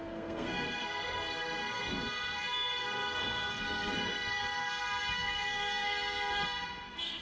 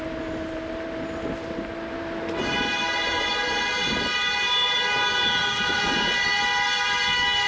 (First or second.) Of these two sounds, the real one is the second